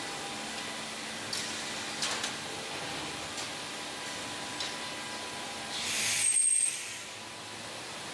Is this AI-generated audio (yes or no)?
no